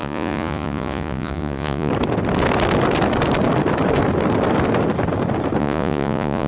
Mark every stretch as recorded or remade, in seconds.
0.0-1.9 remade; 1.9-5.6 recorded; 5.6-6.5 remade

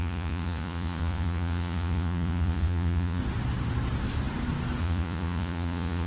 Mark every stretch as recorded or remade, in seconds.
0.0-3.2 remade; 3.2-4.8 recorded; 4.8-6.1 remade

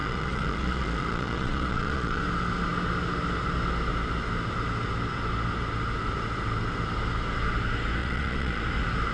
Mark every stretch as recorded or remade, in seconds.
0.0-2.2 remade; 2.2-8.0 recorded; 8.0-8.6 remade; 8.6-9.1 recorded

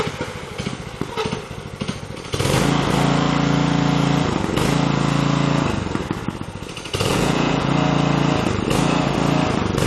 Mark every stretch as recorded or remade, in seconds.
0.0-7.1 recorded; 7.1-7.7 remade; 7.7-9.9 recorded

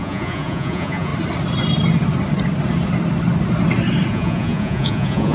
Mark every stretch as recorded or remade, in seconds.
0.0-1.1 remade; 1.1-4.1 recorded; 4.1-5.3 remade

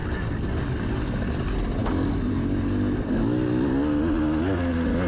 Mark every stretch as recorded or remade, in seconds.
0.0-5.1 recorded

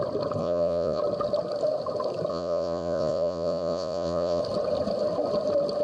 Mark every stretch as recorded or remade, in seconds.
0.0-0.4 recorded; 0.4-1.0 remade; 1.0-2.3 recorded; 2.3-4.4 remade; 4.4-5.8 recorded

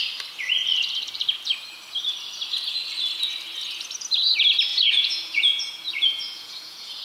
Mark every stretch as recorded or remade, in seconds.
0.0-4.7 recorded; 4.7-7.0 remade